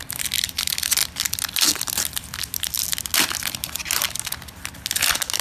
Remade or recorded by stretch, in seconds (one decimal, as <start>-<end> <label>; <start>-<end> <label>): 0.0-5.4 recorded